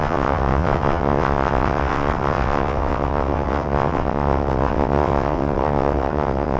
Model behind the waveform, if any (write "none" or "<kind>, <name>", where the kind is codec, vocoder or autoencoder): vocoder, WaveNeXt